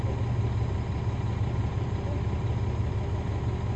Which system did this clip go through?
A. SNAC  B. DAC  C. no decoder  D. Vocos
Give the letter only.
C